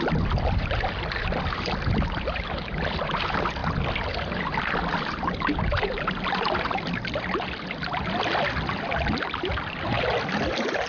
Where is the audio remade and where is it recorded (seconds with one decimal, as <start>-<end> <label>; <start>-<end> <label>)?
0.0-10.9 recorded